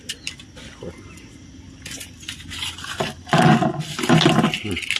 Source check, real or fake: real